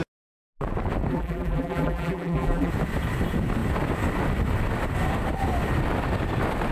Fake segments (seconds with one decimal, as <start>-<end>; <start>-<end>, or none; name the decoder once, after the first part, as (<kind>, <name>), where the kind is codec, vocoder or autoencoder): 1.1-2.7 (vocoder, BigVGAN v2)